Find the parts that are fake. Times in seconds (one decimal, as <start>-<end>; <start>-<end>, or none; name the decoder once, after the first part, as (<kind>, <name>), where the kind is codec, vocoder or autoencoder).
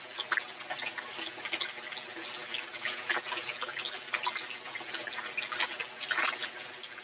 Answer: none